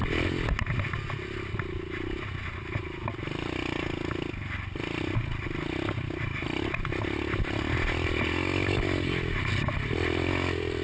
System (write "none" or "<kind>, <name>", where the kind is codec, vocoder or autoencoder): none